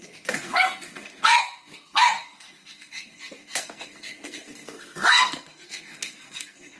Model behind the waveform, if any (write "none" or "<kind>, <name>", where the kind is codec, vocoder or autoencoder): codec, SNAC